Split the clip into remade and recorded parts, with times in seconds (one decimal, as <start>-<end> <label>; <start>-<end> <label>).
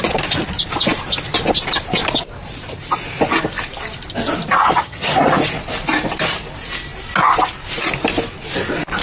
0.0-4.6 recorded; 4.6-5.3 remade; 5.3-9.0 recorded